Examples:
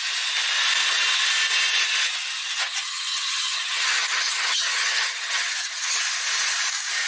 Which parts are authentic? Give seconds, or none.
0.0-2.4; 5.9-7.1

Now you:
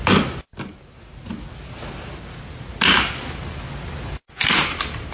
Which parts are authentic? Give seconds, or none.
0.0-5.1